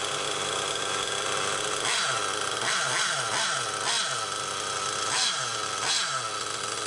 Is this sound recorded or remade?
recorded